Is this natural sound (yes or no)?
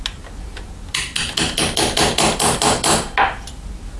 yes